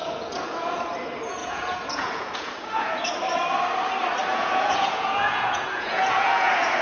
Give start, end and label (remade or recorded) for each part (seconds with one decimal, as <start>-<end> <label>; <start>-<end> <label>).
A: 0.0-0.8 remade; 0.8-1.4 recorded; 1.4-3.1 remade; 3.1-4.3 recorded; 4.3-6.8 remade